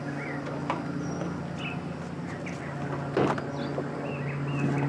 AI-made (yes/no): no